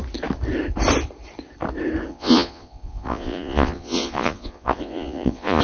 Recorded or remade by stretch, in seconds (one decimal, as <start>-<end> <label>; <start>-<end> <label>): 0.0-2.1 recorded; 2.1-5.6 remade